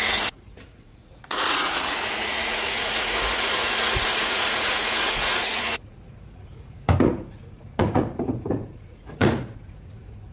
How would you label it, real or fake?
fake